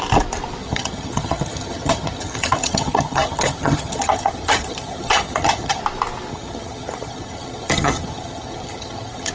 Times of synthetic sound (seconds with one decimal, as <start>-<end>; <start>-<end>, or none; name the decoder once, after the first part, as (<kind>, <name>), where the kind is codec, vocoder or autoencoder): 0.6-5.8 (vocoder, HiFi-GAN); 6.3-9.3